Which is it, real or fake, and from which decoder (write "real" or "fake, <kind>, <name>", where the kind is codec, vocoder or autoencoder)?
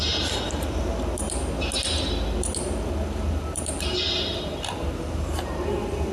real